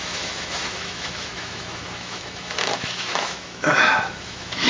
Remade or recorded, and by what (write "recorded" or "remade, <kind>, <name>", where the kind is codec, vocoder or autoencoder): remade, autoencoder, DAC-VAE